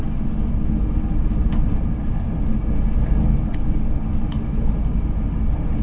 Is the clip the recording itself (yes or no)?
yes